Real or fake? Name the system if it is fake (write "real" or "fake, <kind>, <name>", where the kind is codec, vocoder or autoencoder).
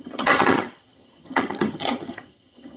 fake, vocoder, HiFi-GAN